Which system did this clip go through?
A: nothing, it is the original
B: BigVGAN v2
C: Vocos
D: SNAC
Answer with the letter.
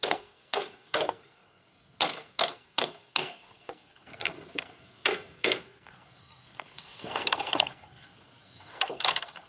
D